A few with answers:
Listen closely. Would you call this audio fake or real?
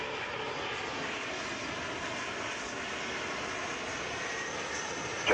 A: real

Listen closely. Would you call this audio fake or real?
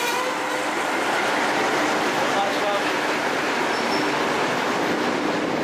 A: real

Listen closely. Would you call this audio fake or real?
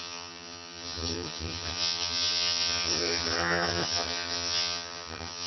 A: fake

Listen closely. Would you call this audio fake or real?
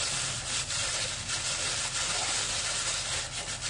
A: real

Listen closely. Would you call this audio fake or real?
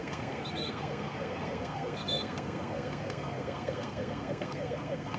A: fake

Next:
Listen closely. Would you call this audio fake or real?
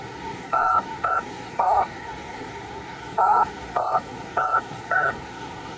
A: fake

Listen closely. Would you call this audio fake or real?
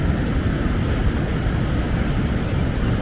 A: real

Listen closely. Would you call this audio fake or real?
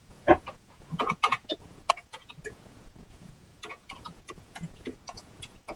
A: fake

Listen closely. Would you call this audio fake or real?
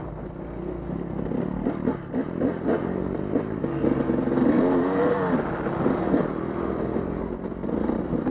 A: real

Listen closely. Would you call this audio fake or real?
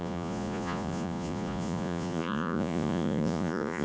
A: fake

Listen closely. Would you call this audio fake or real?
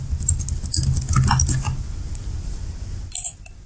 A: real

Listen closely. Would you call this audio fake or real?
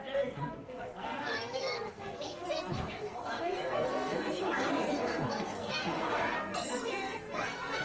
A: fake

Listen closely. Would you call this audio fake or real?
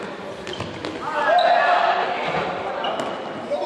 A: real